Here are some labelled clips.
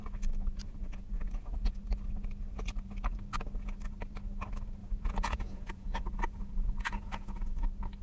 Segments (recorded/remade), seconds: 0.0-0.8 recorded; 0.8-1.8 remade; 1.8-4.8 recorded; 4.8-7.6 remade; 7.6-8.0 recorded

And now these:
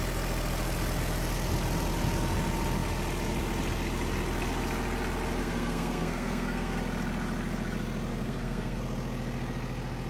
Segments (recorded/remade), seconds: 0.0-5.4 recorded; 5.4-6.8 remade; 6.8-8.1 recorded; 8.1-8.8 remade; 8.8-10.1 recorded

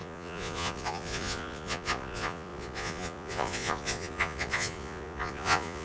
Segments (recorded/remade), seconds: 0.0-5.8 remade